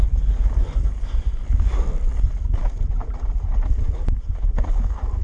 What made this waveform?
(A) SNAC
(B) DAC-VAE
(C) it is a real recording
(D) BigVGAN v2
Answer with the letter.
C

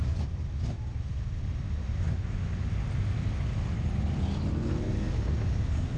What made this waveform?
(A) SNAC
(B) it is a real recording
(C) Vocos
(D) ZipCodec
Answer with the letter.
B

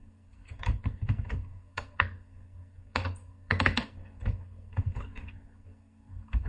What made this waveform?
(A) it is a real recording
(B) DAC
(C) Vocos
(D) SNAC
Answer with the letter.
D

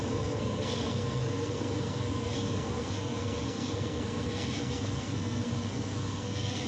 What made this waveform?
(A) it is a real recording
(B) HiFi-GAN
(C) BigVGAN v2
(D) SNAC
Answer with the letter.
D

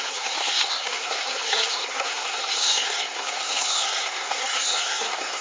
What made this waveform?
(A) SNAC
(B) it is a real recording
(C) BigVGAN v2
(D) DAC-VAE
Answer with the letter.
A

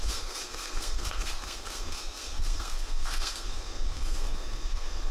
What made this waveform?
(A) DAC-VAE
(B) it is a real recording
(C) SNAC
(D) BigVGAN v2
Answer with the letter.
C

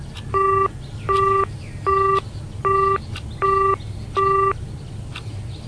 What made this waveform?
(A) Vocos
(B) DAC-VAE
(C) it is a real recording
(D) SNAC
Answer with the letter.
C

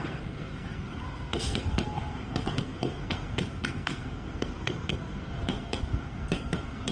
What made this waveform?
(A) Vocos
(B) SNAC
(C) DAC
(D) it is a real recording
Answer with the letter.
B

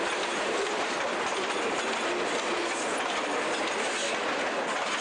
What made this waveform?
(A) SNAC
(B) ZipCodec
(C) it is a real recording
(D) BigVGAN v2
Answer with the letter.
C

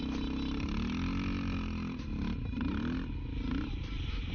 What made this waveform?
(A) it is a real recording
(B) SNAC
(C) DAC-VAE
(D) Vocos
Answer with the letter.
A